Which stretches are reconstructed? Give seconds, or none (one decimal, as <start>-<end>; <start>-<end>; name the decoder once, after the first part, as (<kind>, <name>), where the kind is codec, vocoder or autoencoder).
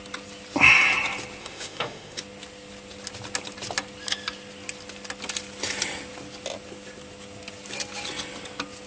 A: 1.4-2.2 (autoencoder, DAC-VAE)